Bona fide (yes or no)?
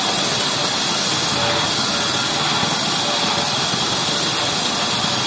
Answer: yes